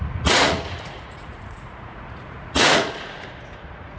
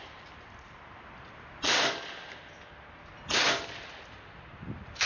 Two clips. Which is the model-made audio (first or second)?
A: first